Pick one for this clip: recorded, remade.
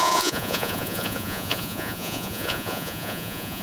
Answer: remade